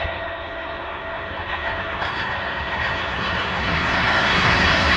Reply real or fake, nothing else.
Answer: fake